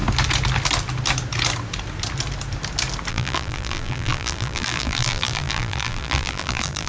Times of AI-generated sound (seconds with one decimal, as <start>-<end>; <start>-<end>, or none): 3.1-6.9